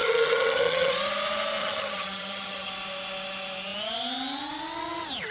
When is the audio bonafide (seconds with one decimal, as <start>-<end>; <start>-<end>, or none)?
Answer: 0.9-1.6; 2.7-5.3